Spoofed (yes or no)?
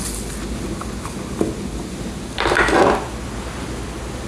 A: no